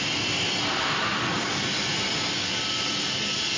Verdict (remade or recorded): recorded